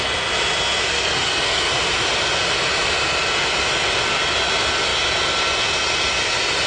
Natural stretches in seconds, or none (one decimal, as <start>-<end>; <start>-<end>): 0.0-0.9; 1.7-6.7